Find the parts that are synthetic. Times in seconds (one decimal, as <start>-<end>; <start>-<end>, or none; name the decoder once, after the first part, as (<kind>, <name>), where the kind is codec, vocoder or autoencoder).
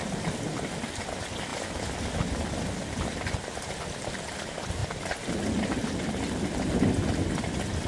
none